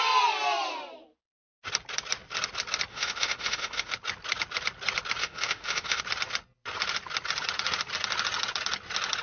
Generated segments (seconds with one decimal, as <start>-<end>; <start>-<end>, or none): 2.9-3.9; 5.2-6.0

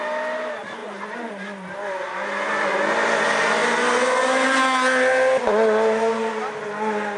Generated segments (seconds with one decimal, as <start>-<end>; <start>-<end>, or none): none

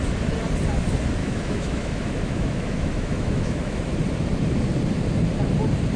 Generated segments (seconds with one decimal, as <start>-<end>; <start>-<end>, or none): 1.2-3.8

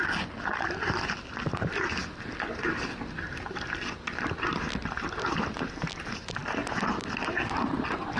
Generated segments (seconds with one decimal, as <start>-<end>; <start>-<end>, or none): none

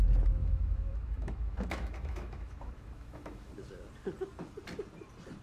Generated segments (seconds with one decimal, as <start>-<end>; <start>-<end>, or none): 0.4-3.5